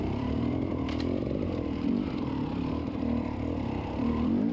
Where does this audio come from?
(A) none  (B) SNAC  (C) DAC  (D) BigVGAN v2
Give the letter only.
D